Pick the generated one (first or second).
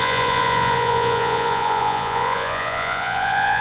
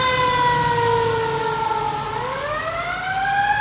first